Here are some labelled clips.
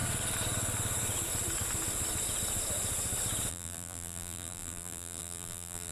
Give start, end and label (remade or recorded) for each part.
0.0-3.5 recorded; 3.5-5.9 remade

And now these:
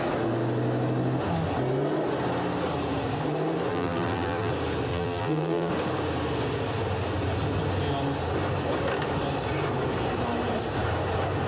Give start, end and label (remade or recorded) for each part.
0.0-3.7 recorded; 3.7-4.5 remade; 4.5-4.9 recorded; 4.9-5.7 remade; 5.7-11.5 recorded